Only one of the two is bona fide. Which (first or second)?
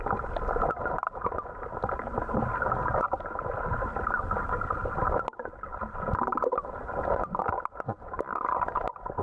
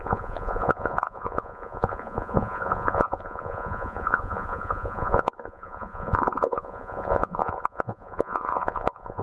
first